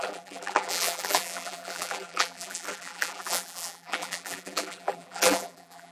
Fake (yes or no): yes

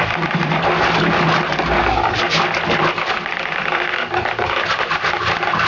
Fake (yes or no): no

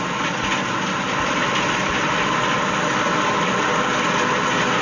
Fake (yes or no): no